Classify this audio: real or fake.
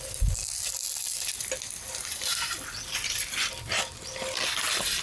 real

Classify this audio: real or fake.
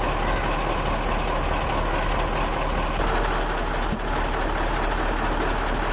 real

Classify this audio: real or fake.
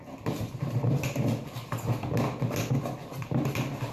real